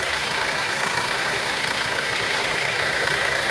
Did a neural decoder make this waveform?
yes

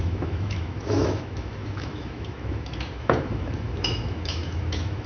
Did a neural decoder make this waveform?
yes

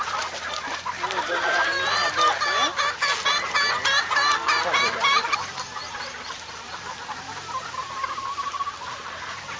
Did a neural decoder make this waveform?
no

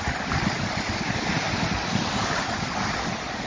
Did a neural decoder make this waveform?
no